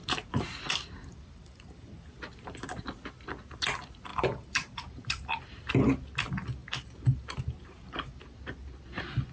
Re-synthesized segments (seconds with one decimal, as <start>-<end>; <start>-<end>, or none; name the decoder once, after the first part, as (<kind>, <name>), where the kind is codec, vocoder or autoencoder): 0.0-2.7 (vocoder, BigVGAN v2); 4.1-5.7; 6.6-8.2